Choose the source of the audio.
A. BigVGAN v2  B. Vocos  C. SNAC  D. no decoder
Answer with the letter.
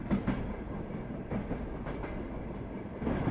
D